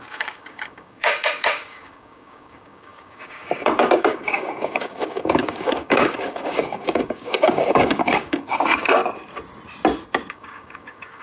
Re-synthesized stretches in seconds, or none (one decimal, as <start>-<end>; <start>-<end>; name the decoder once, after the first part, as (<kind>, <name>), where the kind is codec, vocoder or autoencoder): 0.0-9.0 (codec, DAC); 10.3-11.2